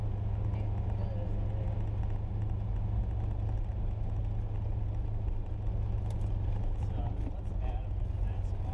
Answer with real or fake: real